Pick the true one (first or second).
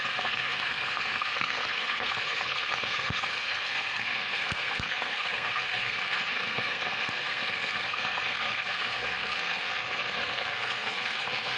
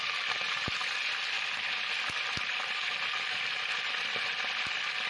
second